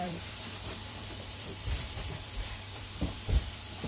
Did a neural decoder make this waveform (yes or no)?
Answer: yes